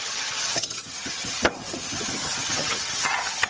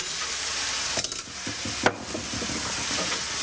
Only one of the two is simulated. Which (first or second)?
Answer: first